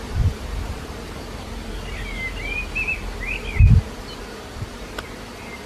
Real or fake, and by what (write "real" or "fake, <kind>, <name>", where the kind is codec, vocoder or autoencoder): real